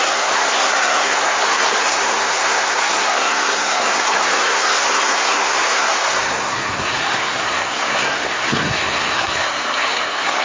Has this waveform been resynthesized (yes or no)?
yes